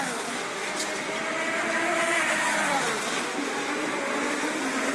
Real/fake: real